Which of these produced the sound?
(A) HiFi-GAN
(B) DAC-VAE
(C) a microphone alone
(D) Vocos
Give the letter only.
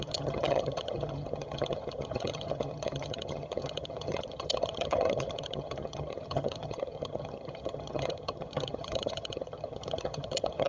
A